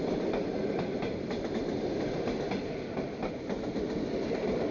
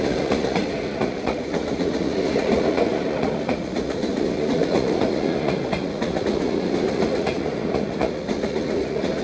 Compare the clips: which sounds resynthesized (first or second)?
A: second